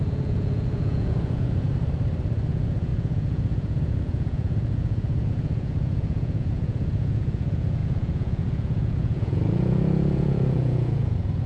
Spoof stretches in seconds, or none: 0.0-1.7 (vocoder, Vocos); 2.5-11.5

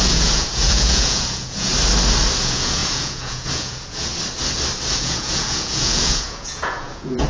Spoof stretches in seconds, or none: 0.0-1.7 (vocoder, Vocos); 2.4-4.1; 5.0-7.3

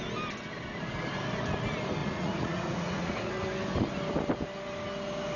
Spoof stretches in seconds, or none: 2.0-3.3 (vocoder, Vocos)

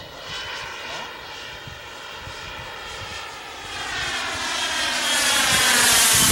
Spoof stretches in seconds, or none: none

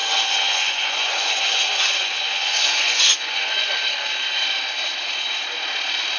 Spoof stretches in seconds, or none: 0.0-3.7 (vocoder, Vocos)